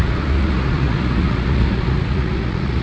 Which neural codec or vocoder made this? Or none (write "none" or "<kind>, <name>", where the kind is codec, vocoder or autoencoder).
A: vocoder, Vocos